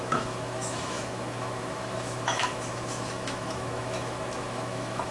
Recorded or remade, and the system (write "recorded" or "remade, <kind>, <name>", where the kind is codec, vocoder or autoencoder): remade, autoencoder, DAC-VAE